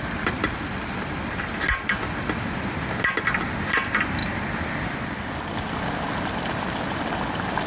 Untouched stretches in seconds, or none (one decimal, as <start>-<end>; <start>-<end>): 0.0-4.2; 5.0-7.7